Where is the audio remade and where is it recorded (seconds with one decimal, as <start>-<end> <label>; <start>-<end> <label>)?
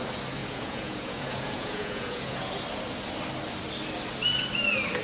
0.0-0.4 recorded; 0.4-2.5 remade; 2.5-5.0 recorded